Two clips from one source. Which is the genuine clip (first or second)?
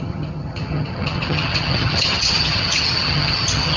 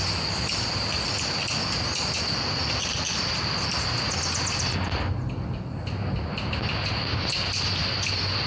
second